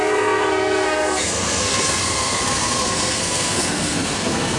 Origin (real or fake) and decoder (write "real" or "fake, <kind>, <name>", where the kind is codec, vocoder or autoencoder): fake, codec, SNAC